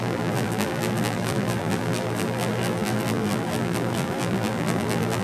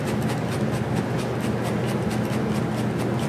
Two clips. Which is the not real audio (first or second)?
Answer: first